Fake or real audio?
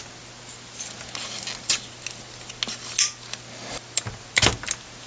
real